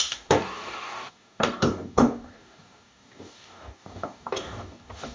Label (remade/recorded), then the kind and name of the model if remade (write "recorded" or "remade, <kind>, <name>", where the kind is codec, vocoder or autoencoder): remade, codec, DAC